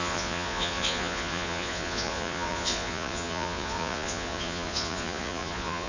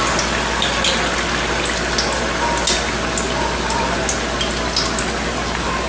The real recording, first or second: second